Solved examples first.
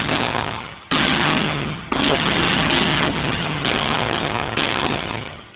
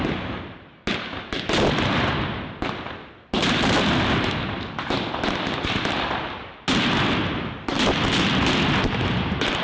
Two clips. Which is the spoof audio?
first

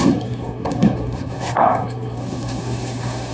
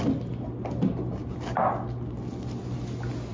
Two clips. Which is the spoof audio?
first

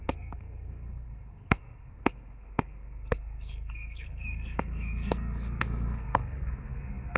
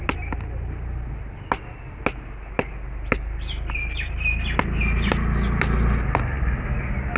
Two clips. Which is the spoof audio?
first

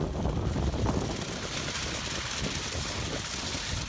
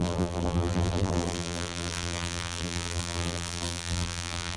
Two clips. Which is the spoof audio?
second